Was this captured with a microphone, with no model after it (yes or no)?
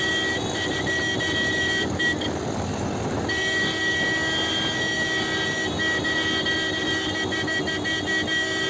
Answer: yes